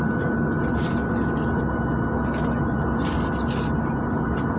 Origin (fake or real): real